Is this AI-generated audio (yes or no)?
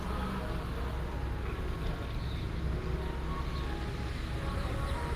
no